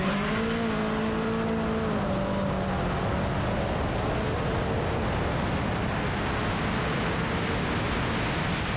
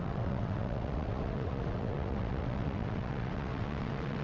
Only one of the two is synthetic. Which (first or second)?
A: second